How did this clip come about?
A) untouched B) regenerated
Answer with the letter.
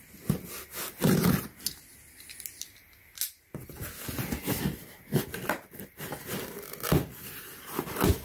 A